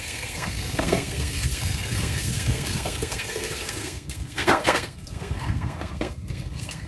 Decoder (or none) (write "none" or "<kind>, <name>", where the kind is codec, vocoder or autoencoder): codec, SNAC